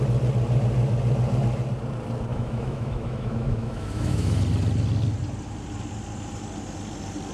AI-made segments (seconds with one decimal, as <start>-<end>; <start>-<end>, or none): 2.3-4.4